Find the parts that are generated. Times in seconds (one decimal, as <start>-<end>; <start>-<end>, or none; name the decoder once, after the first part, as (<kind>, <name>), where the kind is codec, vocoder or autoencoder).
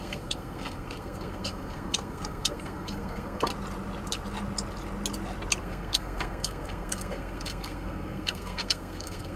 0.0-3.5 (codec, SNAC); 5.6-9.4